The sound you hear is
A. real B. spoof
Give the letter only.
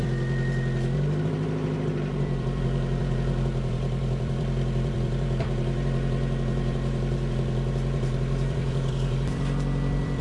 B